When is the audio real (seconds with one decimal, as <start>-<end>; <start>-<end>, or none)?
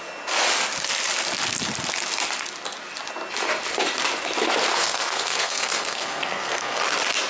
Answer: 0.0-4.7; 6.8-7.3